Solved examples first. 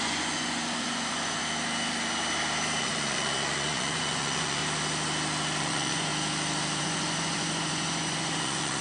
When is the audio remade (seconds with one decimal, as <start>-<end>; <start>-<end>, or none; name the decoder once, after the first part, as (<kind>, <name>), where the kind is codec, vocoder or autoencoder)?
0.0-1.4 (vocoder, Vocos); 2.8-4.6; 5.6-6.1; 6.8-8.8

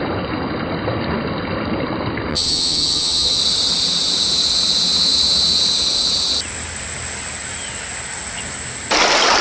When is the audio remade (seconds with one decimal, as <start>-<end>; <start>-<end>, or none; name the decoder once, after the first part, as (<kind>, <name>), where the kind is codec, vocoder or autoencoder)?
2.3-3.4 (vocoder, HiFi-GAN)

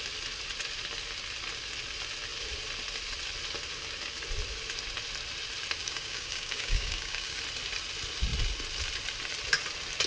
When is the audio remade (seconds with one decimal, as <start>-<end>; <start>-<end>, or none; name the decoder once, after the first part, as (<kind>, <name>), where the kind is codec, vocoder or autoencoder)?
5.8-7.4 (codec, DAC)

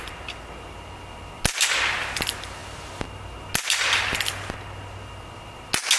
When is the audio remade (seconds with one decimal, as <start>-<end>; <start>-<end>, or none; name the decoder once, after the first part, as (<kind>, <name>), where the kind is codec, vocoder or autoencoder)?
none